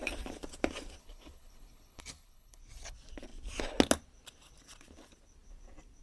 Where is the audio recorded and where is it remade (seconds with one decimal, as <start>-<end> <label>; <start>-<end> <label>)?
0.0-1.0 recorded; 1.0-2.6 remade; 2.6-6.0 recorded